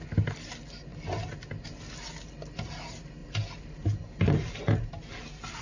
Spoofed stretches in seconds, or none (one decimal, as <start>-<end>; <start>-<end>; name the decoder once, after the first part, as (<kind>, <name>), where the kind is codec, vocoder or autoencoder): 3.2-5.0 (vocoder, BigVGAN v2)